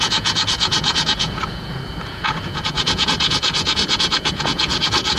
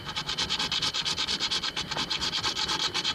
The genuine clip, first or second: second